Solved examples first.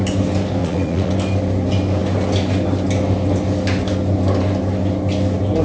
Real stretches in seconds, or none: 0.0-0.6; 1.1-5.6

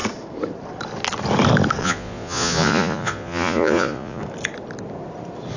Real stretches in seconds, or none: 0.0-1.8; 4.2-5.6

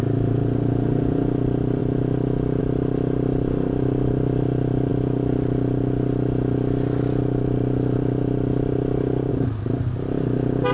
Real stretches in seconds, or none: 0.0-10.7

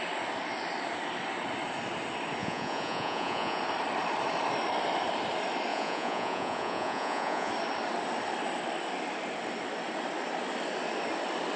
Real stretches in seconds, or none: 0.0-2.4; 3.6-5.7; 7.5-11.6

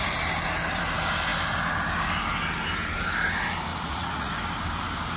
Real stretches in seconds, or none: 0.0-3.7; 4.3-5.2

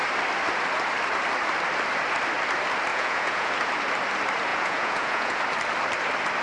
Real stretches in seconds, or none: 0.0-2.9; 3.5-4.5; 5.4-6.4

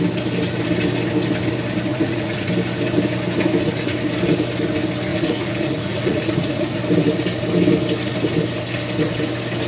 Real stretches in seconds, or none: 0.0-1.9; 2.5-5.1; 6.8-9.7

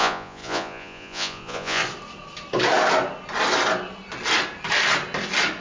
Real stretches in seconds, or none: 1.8-5.6